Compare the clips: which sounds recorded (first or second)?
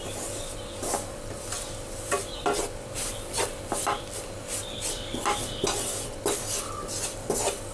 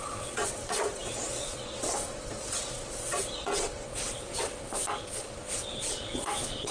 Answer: first